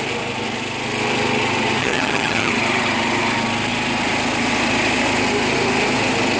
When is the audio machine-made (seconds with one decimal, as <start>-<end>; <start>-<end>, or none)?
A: 1.8-2.5